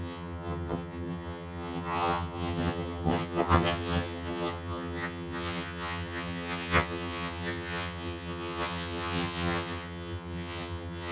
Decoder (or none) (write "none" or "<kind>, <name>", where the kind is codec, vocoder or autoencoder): vocoder, HiFi-GAN